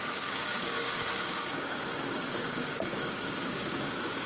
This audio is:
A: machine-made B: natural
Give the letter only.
A